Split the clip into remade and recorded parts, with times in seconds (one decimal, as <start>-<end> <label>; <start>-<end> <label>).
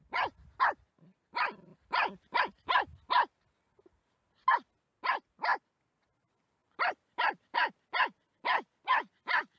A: 0.0-1.7 recorded; 1.7-2.4 remade; 2.4-6.6 recorded; 6.6-7.7 remade; 7.7-9.6 recorded